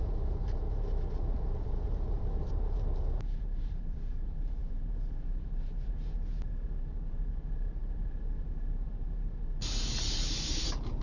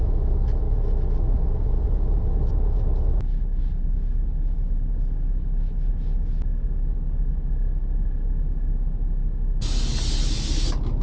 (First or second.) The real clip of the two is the second